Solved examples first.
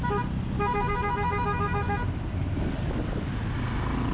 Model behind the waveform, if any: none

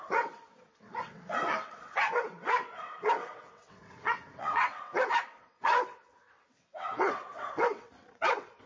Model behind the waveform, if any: vocoder, WaveNeXt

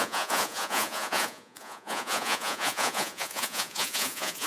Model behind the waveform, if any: vocoder, Vocos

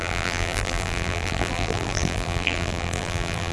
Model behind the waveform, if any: vocoder, BigVGAN v2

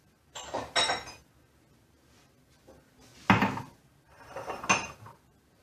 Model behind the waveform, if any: none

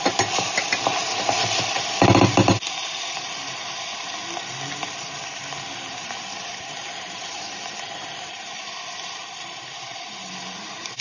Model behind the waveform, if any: none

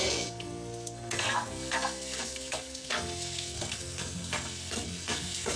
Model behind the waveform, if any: codec, SNAC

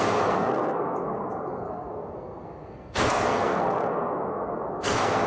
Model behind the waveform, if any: codec, SNAC